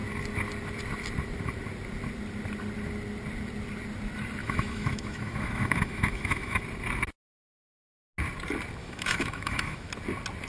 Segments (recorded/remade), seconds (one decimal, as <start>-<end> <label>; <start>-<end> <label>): 0.0-4.4 recorded; 4.4-6.6 remade; 6.6-8.8 recorded; 8.8-9.9 remade; 9.9-10.5 recorded